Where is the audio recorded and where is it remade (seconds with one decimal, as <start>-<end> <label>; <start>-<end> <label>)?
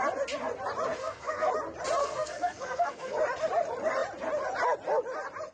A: 0.0-1.0 recorded; 1.0-1.5 remade; 1.5-2.0 recorded; 2.0-3.2 remade; 3.2-5.5 recorded